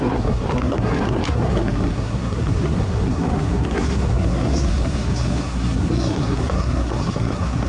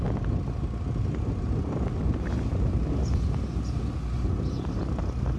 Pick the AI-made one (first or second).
first